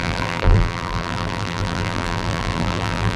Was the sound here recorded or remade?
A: remade